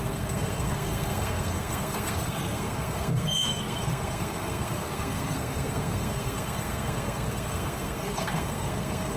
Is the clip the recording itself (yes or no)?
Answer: no